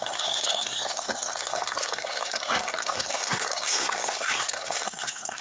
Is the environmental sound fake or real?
fake